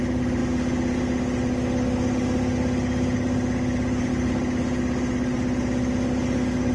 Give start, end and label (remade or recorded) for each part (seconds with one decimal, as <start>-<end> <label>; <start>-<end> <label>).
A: 0.0-6.7 recorded